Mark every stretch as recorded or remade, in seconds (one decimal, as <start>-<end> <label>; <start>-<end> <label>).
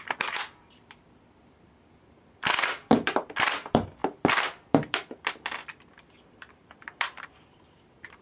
0.0-8.2 remade